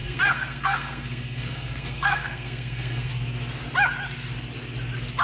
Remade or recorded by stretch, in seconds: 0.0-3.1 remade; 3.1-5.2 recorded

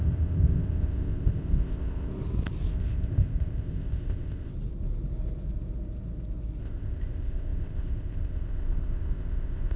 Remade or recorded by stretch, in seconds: 0.0-2.1 remade; 2.1-2.7 recorded; 2.7-4.5 remade; 4.5-6.6 recorded; 6.6-9.8 remade